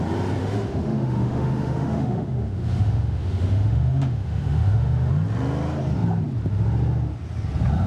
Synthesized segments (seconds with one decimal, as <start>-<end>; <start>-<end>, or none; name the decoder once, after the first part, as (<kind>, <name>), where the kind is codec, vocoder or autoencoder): 0.4-5.1 (autoencoder, DAC-VAE)